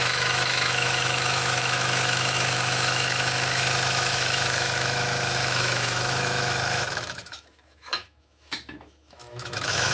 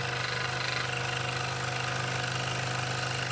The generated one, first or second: first